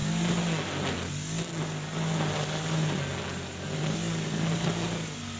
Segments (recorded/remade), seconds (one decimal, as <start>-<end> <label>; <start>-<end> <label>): 0.0-5.4 recorded